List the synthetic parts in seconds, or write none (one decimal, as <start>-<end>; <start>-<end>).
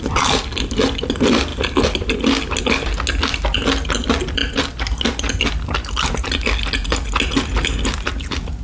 none